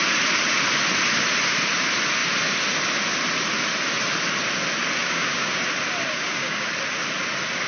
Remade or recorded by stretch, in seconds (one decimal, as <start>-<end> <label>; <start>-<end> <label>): 0.0-5.0 recorded; 5.0-5.6 remade; 5.6-6.1 recorded; 6.1-6.7 remade; 6.7-7.7 recorded